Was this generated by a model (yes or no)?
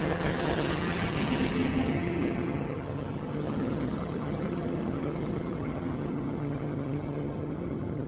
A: yes